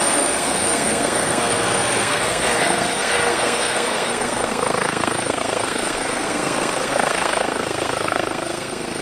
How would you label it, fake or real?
fake